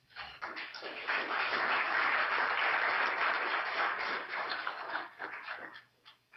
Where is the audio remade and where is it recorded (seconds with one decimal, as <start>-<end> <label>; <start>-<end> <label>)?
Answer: 0.0-2.2 remade; 2.2-3.6 recorded; 3.6-6.4 remade